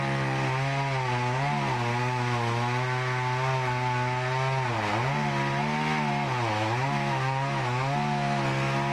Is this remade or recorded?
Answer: recorded